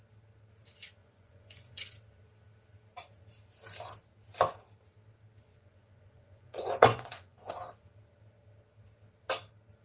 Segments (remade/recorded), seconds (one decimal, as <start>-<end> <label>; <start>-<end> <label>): 0.0-1.0 recorded; 1.0-1.9 remade; 1.9-5.5 recorded; 5.5-7.5 remade; 7.5-9.8 recorded